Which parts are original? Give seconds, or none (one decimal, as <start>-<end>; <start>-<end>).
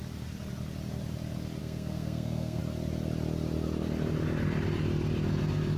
0.0-1.6; 2.6-5.8